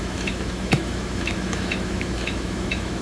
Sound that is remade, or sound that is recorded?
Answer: remade